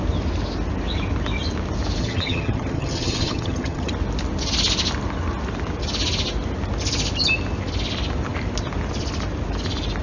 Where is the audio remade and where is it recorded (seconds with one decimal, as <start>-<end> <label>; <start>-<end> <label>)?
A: 0.0-2.0 recorded; 2.0-3.9 remade; 3.9-10.0 recorded